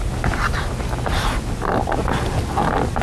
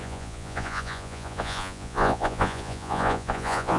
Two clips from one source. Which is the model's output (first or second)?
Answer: second